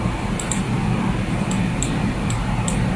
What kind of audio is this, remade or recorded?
recorded